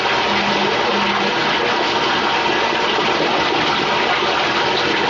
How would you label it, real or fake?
real